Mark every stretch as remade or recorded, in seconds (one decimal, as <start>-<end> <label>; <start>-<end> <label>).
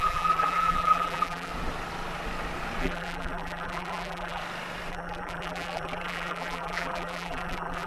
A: 0.0-1.5 remade; 1.5-2.8 recorded; 2.8-4.4 remade; 4.4-4.9 recorded; 4.9-7.9 remade